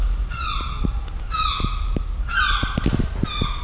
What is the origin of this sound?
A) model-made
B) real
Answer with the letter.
B